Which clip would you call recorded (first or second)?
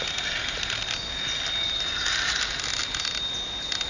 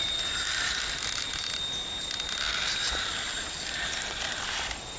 first